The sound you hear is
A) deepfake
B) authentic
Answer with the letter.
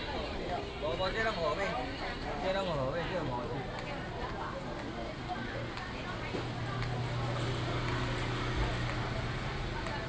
B